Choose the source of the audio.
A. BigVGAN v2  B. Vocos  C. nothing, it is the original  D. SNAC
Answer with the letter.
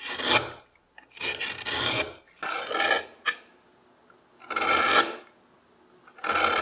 C